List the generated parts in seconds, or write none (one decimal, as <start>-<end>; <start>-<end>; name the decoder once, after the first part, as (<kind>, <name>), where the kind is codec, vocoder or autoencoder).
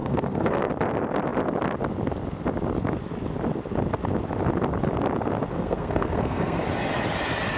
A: 0.0-0.7 (codec, SNAC); 5.5-6.6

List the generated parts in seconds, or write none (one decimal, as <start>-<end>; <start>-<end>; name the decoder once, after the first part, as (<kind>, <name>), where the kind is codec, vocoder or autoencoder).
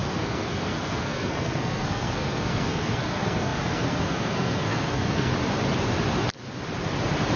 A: 0.0-5.3 (codec, SNAC)